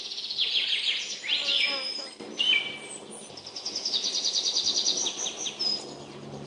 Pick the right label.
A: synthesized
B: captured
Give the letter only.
B